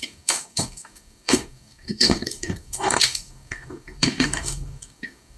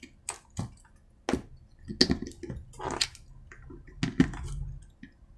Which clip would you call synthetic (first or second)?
first